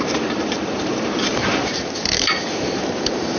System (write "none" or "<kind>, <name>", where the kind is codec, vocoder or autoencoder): vocoder, BigVGAN v2